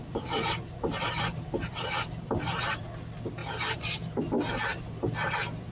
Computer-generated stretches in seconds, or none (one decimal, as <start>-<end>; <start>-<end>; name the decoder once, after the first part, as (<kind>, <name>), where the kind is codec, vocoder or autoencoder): 0.0-2.8 (vocoder, BigVGAN v2); 3.4-4.2; 4.7-5.3